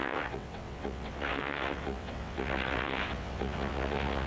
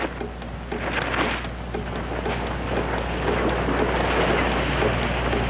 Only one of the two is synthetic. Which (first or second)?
first